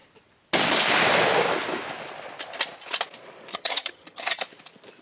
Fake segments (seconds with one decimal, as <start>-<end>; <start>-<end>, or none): 3.5-4.4